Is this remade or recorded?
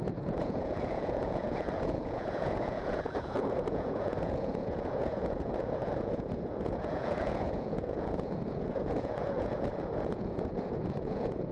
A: remade